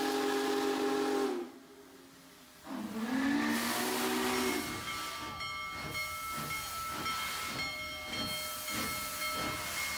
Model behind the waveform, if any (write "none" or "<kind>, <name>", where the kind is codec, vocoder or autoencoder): none